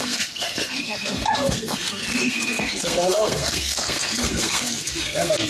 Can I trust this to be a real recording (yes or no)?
no